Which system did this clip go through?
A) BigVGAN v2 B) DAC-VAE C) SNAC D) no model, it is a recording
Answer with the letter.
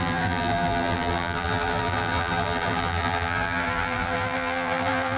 A